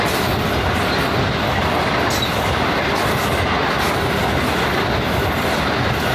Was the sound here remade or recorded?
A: recorded